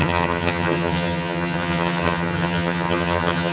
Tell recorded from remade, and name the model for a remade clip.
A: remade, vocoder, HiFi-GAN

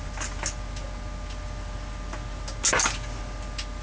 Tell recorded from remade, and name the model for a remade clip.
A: recorded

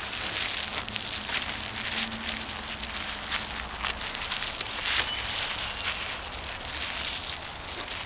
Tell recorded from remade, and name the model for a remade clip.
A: recorded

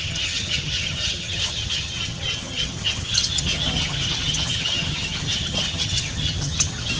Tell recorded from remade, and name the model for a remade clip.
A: remade, vocoder, HiFi-GAN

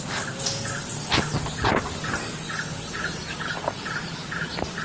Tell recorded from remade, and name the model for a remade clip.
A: recorded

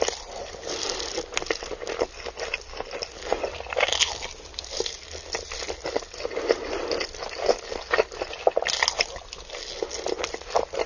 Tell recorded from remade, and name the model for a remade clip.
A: recorded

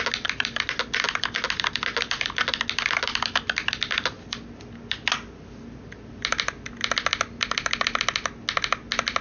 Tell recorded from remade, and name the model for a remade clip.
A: recorded